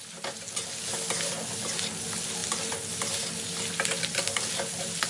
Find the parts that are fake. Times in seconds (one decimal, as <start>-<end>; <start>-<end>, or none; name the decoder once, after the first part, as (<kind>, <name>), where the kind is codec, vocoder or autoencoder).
none